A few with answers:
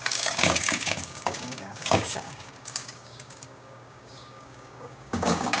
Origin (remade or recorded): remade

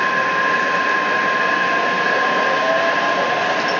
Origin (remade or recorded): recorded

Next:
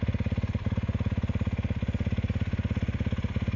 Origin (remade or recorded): recorded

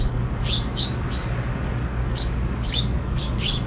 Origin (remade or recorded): remade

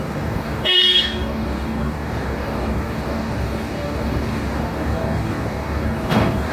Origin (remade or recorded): remade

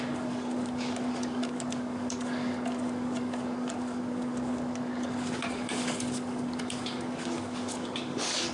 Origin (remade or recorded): remade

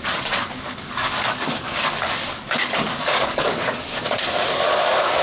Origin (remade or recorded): remade